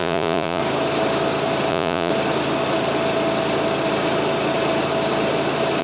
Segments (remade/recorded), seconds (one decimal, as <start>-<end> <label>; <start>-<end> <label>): 0.0-0.6 remade; 0.6-1.7 recorded; 1.7-2.1 remade; 2.1-5.8 recorded